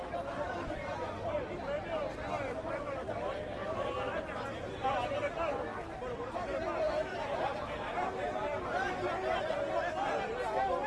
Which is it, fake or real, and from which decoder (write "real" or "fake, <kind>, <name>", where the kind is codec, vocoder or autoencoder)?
real